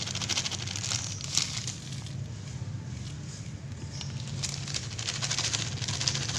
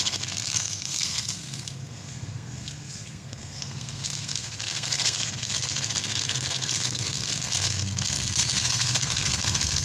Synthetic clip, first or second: second